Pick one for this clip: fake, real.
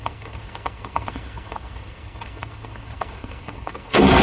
fake